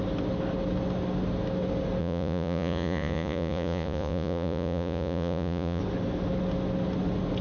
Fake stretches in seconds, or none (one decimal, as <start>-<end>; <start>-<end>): 2.0-5.8